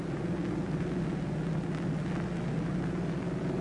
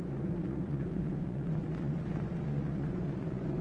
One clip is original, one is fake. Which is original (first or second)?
first